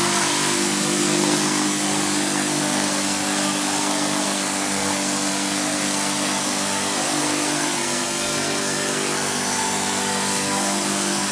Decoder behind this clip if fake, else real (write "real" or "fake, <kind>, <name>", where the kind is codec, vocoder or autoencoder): fake, codec, SNAC